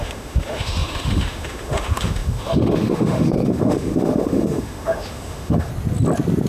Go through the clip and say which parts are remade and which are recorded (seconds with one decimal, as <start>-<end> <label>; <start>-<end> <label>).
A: 0.0-5.7 remade; 5.7-6.5 recorded